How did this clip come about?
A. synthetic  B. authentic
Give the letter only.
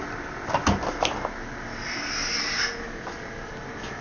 B